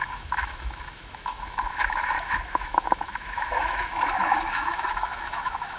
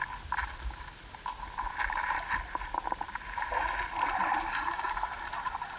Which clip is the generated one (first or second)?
first